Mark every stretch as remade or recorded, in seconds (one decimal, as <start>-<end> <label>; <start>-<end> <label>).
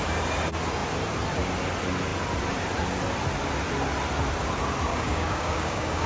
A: 0.0-4.9 recorded; 4.9-6.1 remade